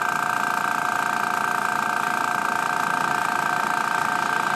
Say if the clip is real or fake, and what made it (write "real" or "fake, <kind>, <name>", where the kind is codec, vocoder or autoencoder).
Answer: real